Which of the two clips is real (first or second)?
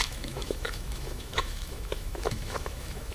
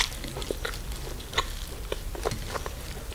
second